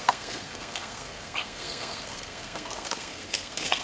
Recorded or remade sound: remade